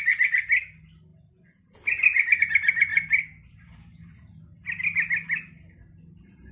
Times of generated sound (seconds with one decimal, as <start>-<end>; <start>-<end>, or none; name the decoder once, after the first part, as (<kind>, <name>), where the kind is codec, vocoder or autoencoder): none